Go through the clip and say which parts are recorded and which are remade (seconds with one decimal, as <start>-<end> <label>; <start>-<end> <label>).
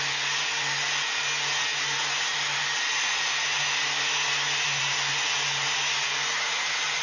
0.0-7.0 recorded